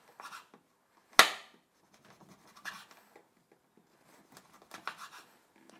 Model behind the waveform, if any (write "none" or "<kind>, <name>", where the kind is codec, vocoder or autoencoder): none